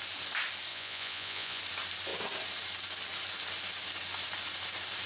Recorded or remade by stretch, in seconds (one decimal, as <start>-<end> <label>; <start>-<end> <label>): 0.0-0.7 recorded; 0.7-1.6 remade; 1.6-5.1 recorded